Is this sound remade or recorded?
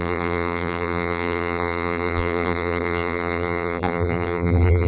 remade